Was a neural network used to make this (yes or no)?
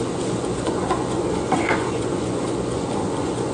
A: yes